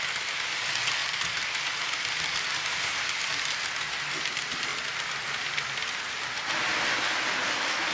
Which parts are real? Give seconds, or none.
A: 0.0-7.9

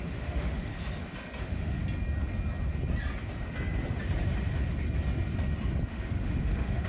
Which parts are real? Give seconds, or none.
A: 0.7-1.4; 1.8-5.9

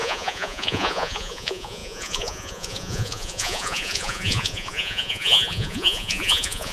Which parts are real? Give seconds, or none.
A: none

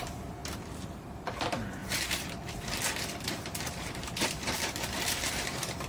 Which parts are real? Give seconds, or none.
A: 1.8-2.6